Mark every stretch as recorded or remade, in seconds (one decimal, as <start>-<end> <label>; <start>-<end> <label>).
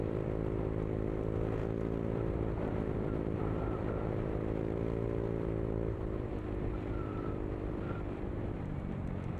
0.0-9.4 remade